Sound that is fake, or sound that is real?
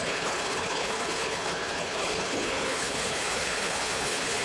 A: fake